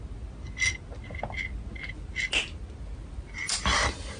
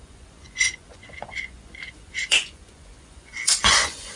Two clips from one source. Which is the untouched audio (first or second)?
first